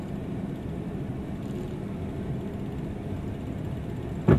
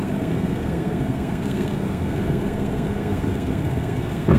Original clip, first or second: first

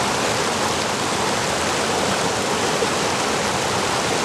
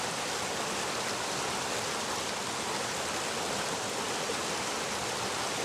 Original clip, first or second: second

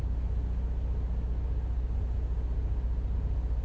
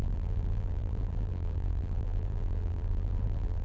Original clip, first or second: first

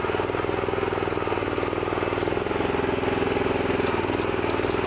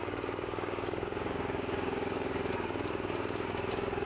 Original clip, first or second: first